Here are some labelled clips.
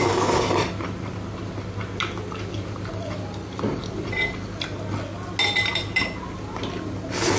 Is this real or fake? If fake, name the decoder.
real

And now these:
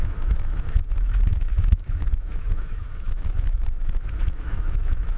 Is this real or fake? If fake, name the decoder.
fake, autoencoder, DAC-VAE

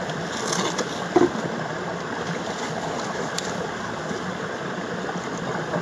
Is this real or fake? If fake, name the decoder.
real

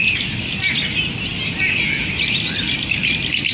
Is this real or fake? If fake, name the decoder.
real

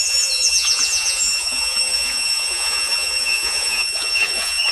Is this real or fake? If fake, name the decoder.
fake, vocoder, Vocos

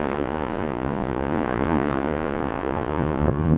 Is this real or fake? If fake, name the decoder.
fake, vocoder, Vocos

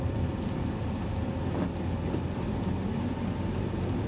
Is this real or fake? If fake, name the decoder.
real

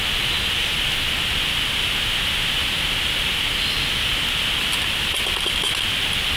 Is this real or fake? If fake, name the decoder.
real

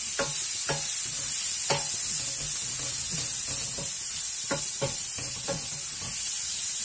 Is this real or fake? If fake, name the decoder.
real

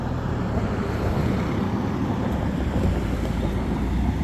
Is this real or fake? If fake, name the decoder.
real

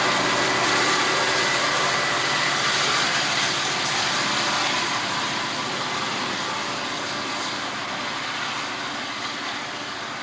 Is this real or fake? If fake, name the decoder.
real